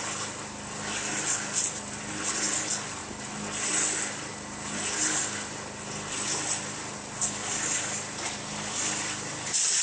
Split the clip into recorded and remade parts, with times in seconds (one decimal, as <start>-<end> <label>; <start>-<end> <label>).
0.0-9.8 recorded